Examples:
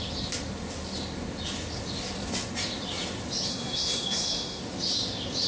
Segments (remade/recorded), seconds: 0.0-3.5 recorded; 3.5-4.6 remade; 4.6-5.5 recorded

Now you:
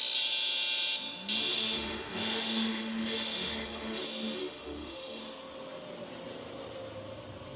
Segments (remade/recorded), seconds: 0.0-1.5 recorded; 1.5-4.0 remade; 4.0-4.4 recorded; 4.4-5.2 remade; 5.2-7.6 recorded

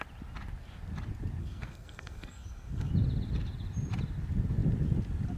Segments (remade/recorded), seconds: 0.0-1.4 recorded; 1.4-2.9 remade; 2.9-5.4 recorded

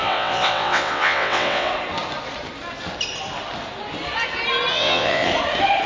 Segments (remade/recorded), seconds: 0.0-1.7 remade; 1.7-4.7 recorded; 4.7-5.3 remade; 5.3-5.9 recorded

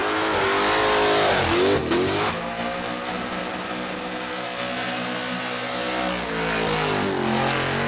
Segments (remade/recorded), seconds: 0.0-7.9 recorded

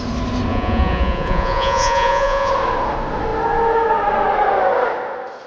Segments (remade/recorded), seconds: 0.0-0.5 recorded; 0.5-2.5 remade; 2.5-5.5 recorded

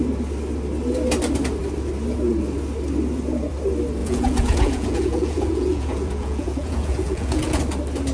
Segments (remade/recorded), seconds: 0.0-4.0 recorded; 4.0-7.6 remade; 7.6-8.1 recorded